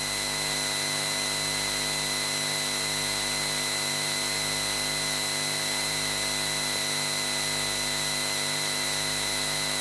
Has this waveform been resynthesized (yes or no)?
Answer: no